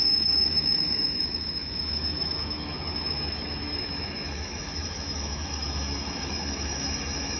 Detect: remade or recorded remade